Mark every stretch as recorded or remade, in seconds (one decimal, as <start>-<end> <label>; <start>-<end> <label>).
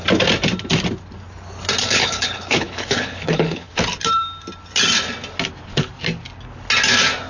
0.0-1.8 recorded; 1.8-3.7 remade; 3.7-7.3 recorded